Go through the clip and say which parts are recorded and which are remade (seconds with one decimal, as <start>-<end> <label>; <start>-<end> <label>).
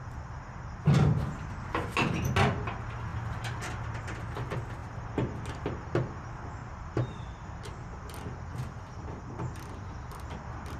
0.0-3.1 recorded; 3.1-3.7 remade; 3.7-6.6 recorded; 6.6-7.6 remade; 7.6-10.8 recorded